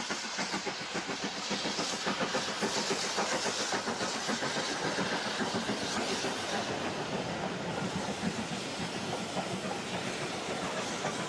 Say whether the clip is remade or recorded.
recorded